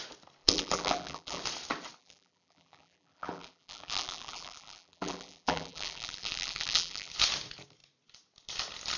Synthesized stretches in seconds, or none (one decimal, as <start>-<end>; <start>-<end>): 0.4-1.4; 2.0-7.1